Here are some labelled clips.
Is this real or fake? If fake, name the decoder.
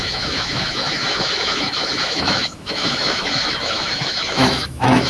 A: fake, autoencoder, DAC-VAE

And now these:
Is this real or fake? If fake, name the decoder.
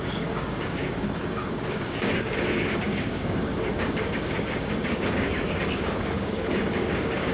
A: fake, codec, DAC